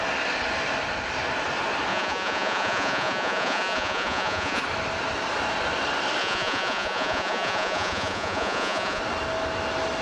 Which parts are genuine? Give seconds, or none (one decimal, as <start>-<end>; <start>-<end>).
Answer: 0.0-1.9; 4.6-6.2; 9.0-10.0